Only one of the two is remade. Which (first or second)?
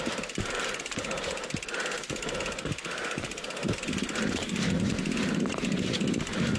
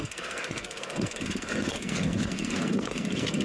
second